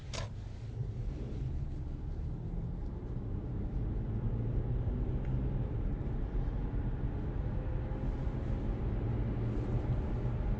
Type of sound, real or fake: real